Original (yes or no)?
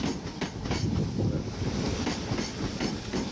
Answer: yes